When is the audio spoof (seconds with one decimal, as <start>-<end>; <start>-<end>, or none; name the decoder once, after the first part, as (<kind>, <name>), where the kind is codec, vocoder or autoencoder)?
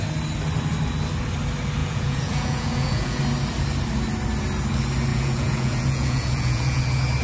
1.8-3.2 (vocoder, Vocos); 5.1-6.8